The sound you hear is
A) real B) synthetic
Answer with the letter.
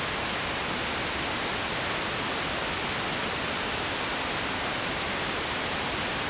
A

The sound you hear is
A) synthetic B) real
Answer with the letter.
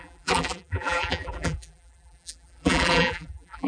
A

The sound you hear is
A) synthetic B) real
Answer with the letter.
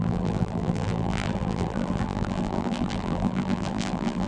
A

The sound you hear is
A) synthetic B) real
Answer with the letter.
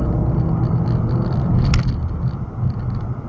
B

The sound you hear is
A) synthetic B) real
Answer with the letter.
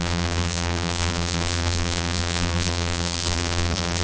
A